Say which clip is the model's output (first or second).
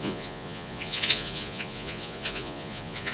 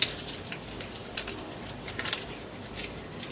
first